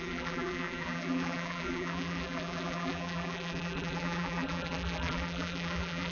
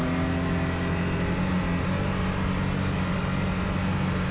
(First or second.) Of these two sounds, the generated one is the first